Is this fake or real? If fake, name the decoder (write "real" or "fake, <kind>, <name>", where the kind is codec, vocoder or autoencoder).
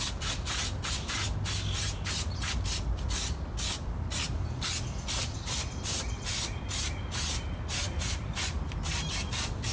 fake, vocoder, BigVGAN v2